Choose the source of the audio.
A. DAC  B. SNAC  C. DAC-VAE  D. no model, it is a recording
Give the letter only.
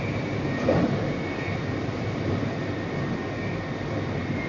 D